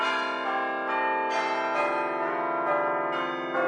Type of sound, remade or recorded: recorded